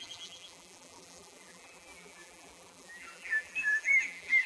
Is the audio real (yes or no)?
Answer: no